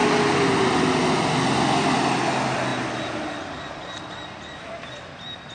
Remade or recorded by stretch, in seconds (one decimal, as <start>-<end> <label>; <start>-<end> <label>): 0.0-5.5 recorded